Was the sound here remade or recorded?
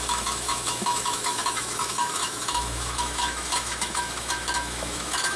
remade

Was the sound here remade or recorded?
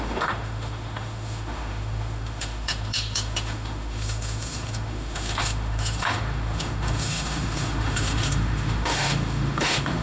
remade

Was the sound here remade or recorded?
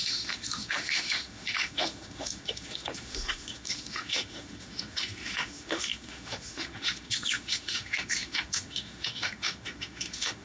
remade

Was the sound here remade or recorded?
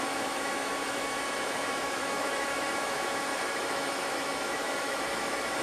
remade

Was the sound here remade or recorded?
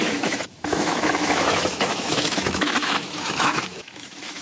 remade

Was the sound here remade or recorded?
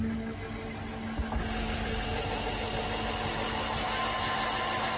recorded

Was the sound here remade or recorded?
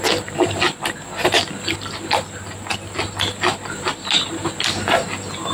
recorded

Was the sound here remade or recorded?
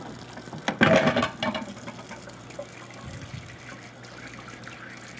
recorded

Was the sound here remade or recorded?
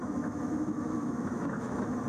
remade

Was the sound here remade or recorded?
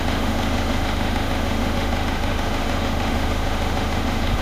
remade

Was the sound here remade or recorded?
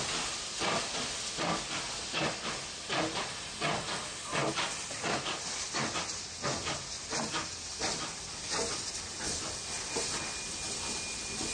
recorded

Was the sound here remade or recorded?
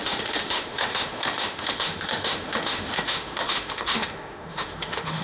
remade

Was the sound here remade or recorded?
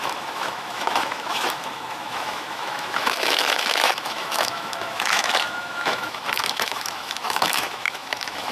remade